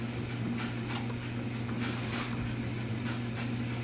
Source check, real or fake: real